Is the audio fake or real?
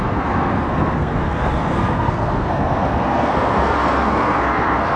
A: fake